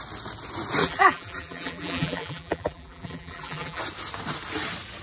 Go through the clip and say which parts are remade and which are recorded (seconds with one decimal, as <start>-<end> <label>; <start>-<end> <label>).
0.0-0.8 recorded; 0.8-3.8 remade; 3.8-5.0 recorded